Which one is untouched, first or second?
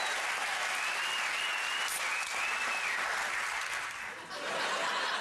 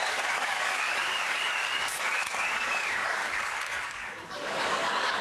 first